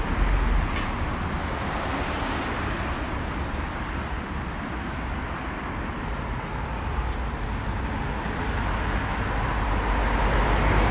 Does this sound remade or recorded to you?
recorded